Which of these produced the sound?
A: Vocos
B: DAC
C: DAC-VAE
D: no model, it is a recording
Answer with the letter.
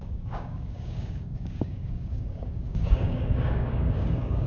B